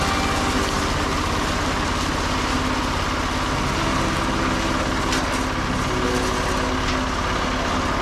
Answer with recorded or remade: recorded